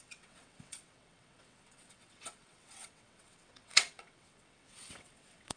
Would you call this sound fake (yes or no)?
yes